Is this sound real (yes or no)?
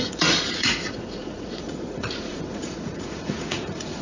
no